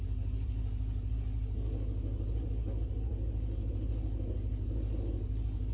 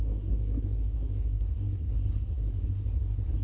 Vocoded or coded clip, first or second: second